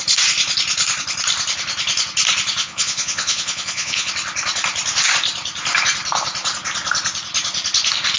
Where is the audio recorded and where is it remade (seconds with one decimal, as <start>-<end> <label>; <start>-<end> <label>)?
0.0-2.6 recorded; 2.6-4.1 remade; 4.1-8.2 recorded